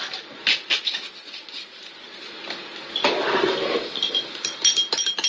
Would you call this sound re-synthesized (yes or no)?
no